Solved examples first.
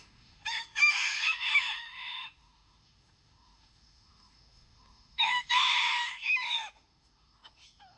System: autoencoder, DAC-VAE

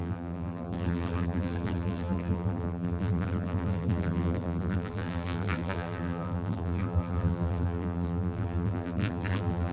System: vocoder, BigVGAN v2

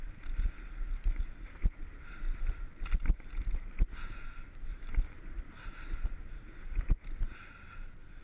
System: none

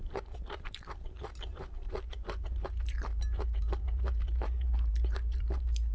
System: vocoder, BigVGAN v2